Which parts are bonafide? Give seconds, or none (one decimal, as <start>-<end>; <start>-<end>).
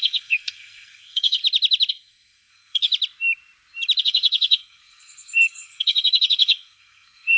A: 1.4-1.9; 2.9-4.0